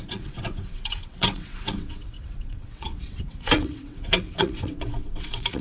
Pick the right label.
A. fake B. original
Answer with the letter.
A